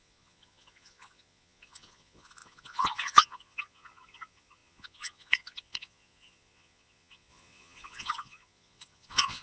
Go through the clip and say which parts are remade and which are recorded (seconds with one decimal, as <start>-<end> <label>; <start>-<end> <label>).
0.0-9.4 remade